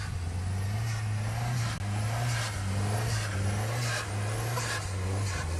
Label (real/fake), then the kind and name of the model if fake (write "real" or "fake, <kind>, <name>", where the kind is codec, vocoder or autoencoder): real